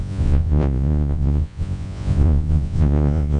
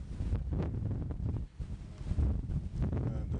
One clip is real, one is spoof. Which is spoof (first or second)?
first